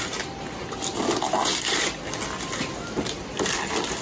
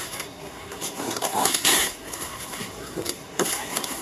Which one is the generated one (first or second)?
second